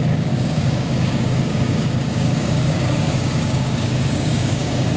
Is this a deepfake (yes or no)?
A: yes